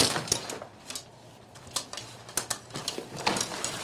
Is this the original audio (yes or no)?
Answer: yes